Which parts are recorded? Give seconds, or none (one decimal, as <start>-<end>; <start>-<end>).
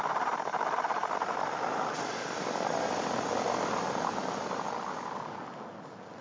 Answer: 0.0-6.2